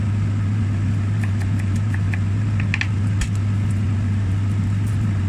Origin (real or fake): real